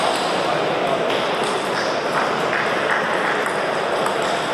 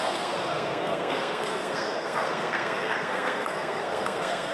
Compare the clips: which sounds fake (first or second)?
second